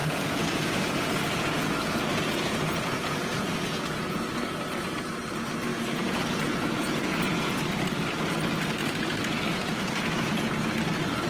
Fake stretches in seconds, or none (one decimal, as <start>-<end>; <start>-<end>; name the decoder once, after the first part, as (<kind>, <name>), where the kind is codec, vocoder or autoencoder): 0.0-5.2 (vocoder, Vocos); 5.7-7.5; 8.8-10.7